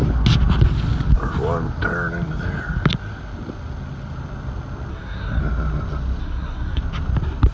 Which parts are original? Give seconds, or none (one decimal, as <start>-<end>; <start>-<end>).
0.0-4.9; 5.4-6.2; 6.8-7.5